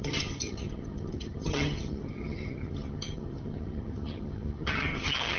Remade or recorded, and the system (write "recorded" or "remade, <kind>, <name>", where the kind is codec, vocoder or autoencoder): remade, vocoder, HiFi-GAN